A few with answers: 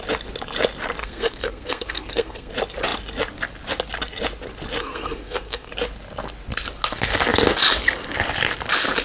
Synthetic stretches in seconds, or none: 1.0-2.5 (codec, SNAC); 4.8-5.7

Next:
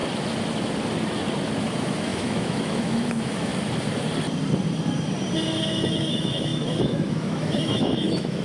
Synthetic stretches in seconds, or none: 1.6-3.5 (autoencoder, DAC-VAE); 5.6-8.4

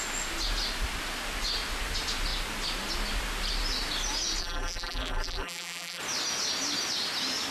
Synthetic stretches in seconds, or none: 4.4-6.0 (vocoder, BigVGAN v2)

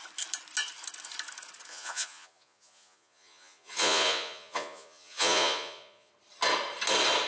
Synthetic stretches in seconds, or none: 1.7-6.1 (vocoder, Vocos)